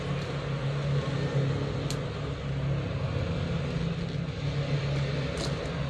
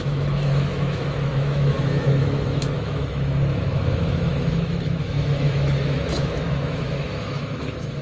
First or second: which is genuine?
first